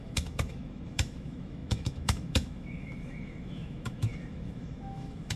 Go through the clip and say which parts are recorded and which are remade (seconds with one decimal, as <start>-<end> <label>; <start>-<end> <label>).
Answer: 0.0-5.4 remade